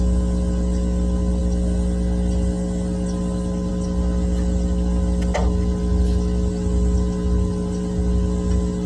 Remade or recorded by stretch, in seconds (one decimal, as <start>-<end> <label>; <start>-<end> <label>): 0.0-8.9 recorded